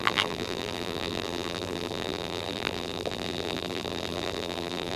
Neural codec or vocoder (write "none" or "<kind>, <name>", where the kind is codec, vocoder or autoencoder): vocoder, BigVGAN v2